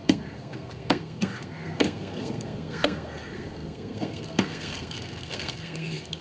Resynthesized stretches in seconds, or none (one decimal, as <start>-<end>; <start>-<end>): 0.0-6.2